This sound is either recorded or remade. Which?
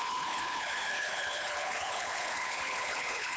remade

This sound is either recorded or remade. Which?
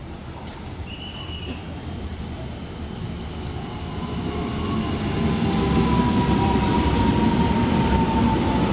recorded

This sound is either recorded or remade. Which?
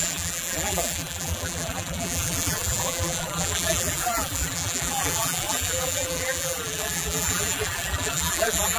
remade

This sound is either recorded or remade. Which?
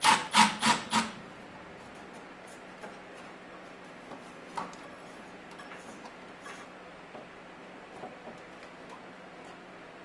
recorded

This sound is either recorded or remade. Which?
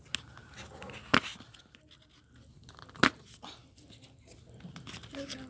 recorded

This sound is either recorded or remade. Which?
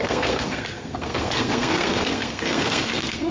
remade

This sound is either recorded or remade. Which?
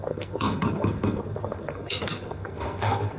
remade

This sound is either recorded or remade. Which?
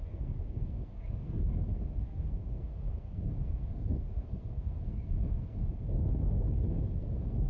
remade